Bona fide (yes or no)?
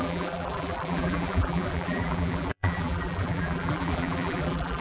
no